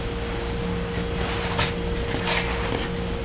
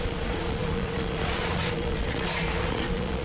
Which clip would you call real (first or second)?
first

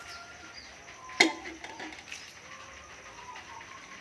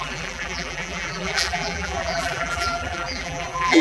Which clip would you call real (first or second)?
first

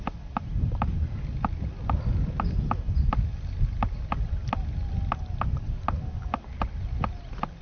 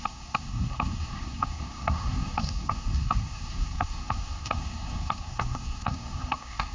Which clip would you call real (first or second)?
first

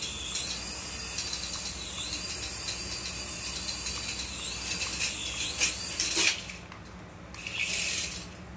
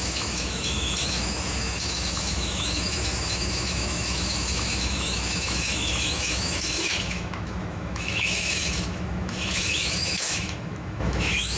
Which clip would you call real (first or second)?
first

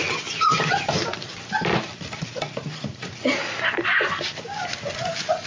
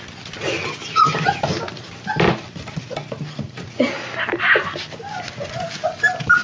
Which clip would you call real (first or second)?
second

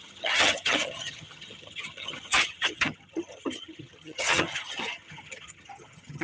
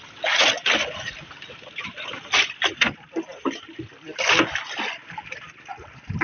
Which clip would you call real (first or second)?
second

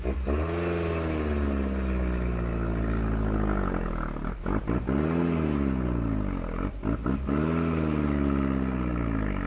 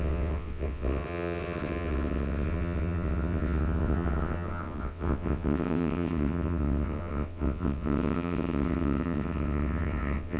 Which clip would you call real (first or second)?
first